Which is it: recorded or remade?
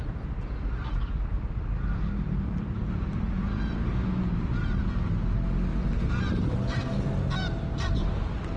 recorded